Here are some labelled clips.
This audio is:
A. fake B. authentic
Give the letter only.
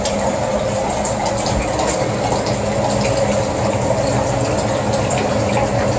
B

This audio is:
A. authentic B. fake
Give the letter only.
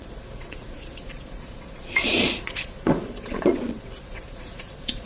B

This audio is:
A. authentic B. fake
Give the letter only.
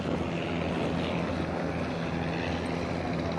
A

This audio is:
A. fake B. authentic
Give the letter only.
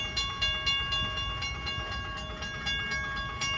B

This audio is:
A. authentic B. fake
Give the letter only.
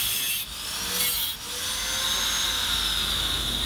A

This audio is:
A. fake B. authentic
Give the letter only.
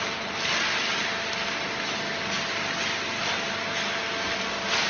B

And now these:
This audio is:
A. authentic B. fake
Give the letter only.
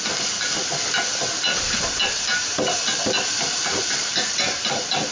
A